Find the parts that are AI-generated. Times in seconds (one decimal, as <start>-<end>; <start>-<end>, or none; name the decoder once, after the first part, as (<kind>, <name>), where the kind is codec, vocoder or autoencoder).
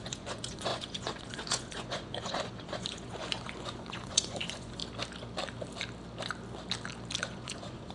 0.0-4.8 (vocoder, Vocos); 7.2-7.9